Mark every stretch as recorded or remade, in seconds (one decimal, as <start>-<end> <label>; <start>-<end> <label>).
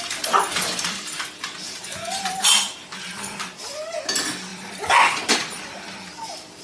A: 0.0-4.5 recorded; 4.5-6.6 remade